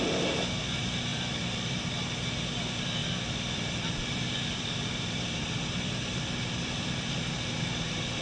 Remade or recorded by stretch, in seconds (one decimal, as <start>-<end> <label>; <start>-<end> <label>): 0.0-1.1 recorded; 1.1-1.9 remade; 1.9-3.0 recorded; 3.0-7.2 remade; 7.2-8.2 recorded